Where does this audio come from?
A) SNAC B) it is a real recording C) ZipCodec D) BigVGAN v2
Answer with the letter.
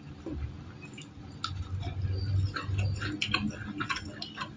B